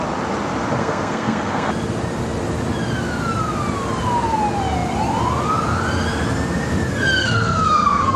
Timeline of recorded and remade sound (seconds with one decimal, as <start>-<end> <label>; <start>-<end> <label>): 0.0-0.8 recorded; 0.8-1.7 remade; 1.7-6.9 recorded; 6.9-8.2 remade